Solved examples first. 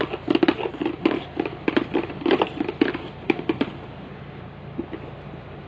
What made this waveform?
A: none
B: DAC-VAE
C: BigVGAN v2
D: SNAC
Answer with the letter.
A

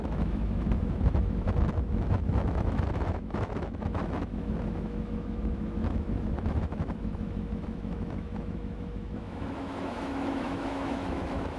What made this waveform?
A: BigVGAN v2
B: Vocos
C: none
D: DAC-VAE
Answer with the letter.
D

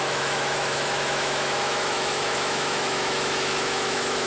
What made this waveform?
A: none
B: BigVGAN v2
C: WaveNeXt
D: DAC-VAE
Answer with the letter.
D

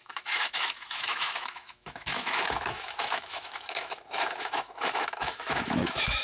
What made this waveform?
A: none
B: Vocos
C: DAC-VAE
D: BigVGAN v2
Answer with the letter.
C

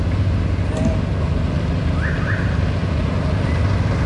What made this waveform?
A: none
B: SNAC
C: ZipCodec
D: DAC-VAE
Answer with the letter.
A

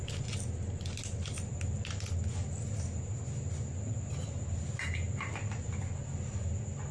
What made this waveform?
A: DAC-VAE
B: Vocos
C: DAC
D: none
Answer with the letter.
D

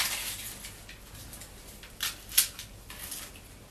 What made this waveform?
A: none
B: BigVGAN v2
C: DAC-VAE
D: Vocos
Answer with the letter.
A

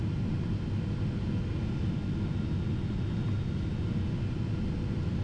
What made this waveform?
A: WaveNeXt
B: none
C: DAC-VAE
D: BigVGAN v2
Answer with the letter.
B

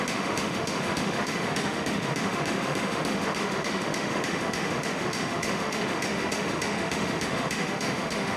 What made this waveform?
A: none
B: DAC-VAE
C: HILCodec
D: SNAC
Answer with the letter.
B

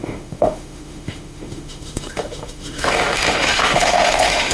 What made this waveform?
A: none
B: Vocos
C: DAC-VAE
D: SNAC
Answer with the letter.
C